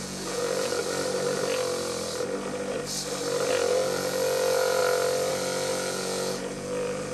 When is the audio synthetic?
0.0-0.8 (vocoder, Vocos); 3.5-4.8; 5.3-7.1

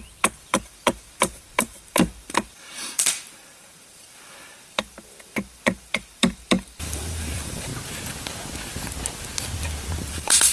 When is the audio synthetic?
0.0-7.7 (vocoder, BigVGAN v2); 10.1-10.5

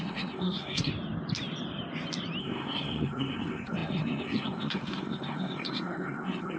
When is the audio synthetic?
0.0-0.9 (codec, SNAC); 2.4-6.6

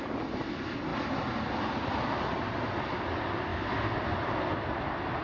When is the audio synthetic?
none

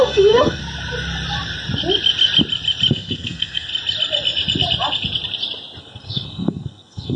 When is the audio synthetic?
0.0-0.6 (codec, SNAC); 2.9-3.7; 5.8-7.2